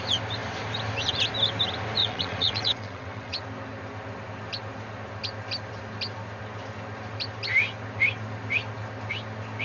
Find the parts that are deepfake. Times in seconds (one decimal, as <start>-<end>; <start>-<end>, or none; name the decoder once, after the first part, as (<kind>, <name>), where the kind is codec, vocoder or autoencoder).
2.0-3.4 (vocoder, WaveNeXt)